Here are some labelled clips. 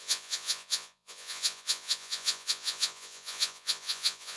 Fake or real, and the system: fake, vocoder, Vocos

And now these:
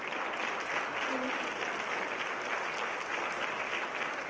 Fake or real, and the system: real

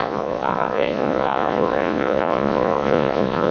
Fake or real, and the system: fake, vocoder, Vocos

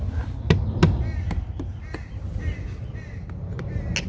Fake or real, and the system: real